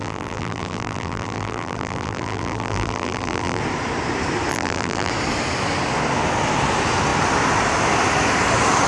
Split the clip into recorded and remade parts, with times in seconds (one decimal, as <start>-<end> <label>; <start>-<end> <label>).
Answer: 0.0-3.6 remade; 3.6-4.5 recorded; 4.5-5.1 remade; 5.1-8.9 recorded